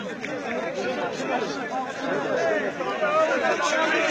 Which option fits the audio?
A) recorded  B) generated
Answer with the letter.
A